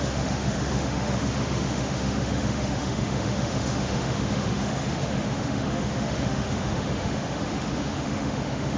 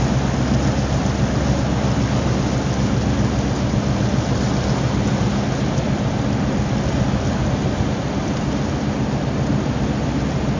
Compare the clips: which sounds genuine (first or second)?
second